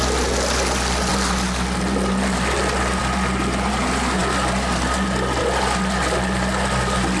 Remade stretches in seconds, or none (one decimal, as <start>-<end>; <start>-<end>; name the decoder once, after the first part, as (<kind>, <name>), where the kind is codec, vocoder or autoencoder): none